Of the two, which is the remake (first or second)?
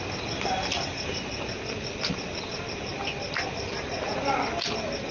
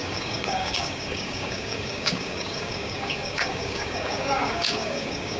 second